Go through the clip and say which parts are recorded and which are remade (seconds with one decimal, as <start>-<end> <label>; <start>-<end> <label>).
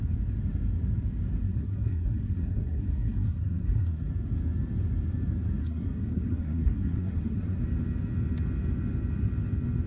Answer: 0.0-1.4 recorded; 1.4-4.1 remade; 4.1-5.6 recorded; 5.6-7.6 remade; 7.6-9.9 recorded